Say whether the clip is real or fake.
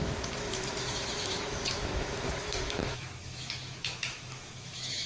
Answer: fake